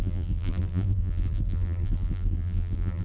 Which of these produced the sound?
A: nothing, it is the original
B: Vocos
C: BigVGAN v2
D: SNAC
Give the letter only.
C